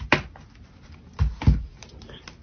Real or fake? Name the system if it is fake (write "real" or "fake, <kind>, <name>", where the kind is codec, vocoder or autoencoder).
real